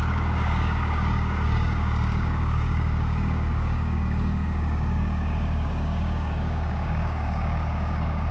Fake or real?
fake